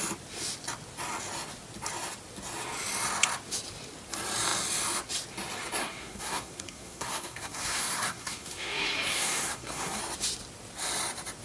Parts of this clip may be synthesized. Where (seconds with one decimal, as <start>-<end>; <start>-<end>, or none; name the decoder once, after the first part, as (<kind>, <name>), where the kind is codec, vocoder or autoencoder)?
5.8-10.0 (codec, SNAC)